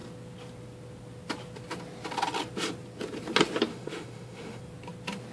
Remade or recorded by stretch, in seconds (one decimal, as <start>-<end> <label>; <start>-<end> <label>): 0.0-3.7 recorded; 3.7-4.6 remade; 4.6-5.3 recorded